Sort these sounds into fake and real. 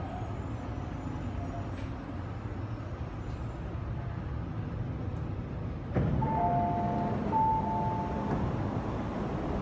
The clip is real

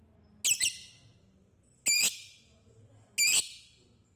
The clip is real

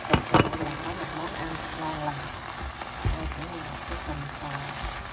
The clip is real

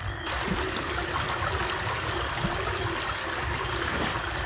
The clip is real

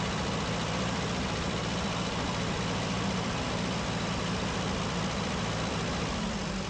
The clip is fake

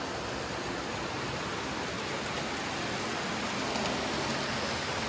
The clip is real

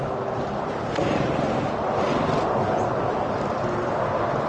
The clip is real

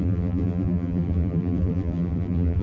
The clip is fake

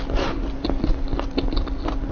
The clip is real